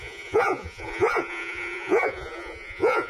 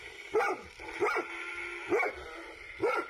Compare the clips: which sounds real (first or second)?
second